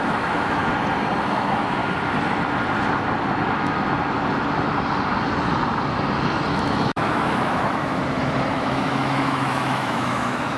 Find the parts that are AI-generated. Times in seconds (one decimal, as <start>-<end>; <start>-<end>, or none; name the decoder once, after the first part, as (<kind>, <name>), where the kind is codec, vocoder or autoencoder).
0.0-0.6 (autoencoder, DAC-VAE); 1.3-1.8; 6.5-8.0; 8.5-10.6